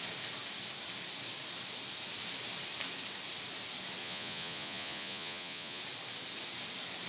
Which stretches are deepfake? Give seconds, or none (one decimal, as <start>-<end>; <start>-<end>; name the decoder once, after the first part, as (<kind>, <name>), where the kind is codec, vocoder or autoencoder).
4.0-5.8 (vocoder, Vocos)